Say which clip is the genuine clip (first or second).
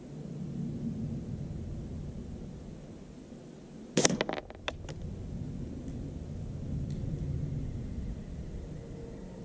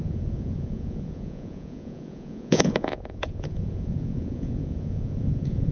first